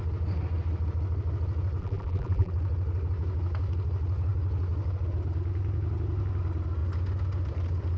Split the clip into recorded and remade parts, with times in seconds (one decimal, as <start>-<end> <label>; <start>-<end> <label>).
0.0-1.8 recorded; 1.8-2.5 remade; 2.5-8.0 recorded